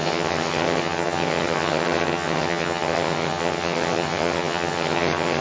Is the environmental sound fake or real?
fake